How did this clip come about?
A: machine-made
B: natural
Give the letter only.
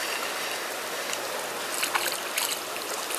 B